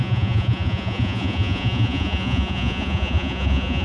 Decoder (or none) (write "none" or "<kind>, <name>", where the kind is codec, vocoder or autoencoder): vocoder, Vocos